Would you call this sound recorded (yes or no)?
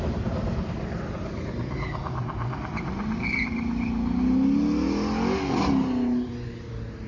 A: yes